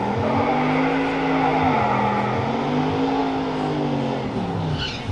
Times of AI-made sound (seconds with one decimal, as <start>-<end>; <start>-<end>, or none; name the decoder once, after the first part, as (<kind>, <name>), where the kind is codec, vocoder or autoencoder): none